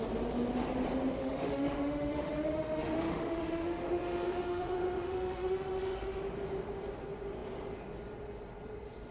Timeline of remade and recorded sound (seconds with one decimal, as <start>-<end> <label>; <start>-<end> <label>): 0.0-1.2 recorded; 1.2-6.2 remade; 6.2-9.1 recorded